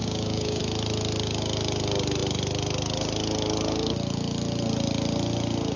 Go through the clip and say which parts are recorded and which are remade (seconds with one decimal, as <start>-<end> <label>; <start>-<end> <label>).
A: 0.0-0.6 remade; 0.6-5.8 recorded